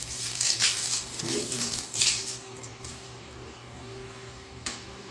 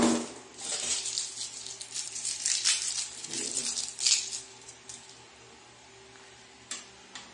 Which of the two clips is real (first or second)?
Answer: second